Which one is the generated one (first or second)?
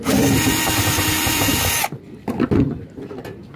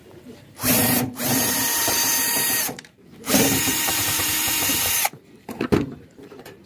second